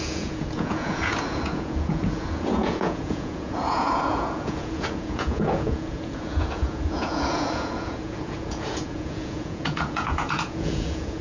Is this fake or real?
fake